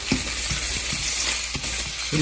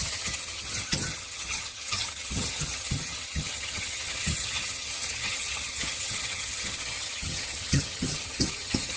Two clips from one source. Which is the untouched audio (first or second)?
first